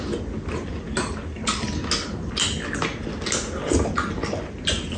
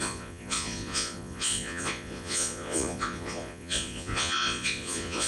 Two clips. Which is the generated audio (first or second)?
second